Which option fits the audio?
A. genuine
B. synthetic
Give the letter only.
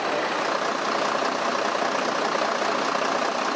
A